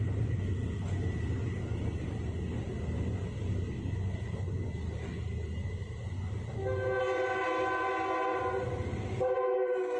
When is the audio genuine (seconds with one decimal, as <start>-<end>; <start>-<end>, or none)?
0.0-10.0